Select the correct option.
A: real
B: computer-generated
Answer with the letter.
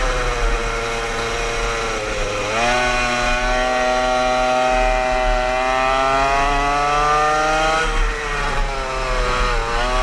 A